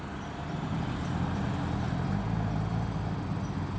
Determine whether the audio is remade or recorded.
recorded